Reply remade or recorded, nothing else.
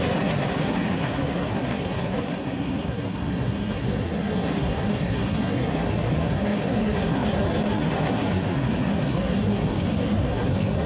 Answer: remade